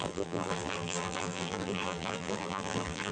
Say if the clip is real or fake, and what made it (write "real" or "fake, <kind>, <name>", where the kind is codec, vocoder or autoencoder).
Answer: fake, vocoder, BigVGAN v2